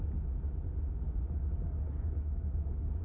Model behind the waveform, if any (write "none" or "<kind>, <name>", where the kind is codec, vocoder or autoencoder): none